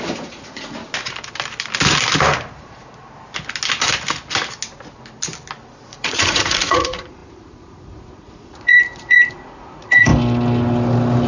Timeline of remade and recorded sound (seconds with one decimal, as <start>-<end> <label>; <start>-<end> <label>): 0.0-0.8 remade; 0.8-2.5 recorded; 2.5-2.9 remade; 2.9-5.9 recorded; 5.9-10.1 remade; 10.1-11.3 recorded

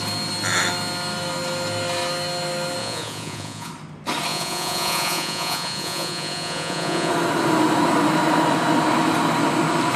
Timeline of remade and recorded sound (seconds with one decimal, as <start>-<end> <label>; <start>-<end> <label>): 0.0-2.8 recorded; 2.8-3.7 remade; 3.7-4.3 recorded; 4.3-7.1 remade; 7.1-10.0 recorded

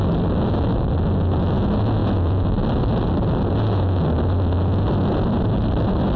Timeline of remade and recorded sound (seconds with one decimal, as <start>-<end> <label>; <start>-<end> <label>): 0.0-6.2 recorded